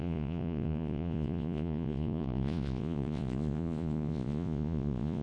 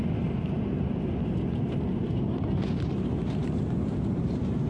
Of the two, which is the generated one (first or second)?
first